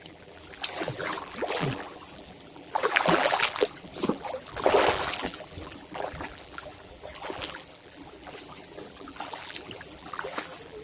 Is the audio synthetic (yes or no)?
yes